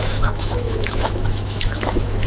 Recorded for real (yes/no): no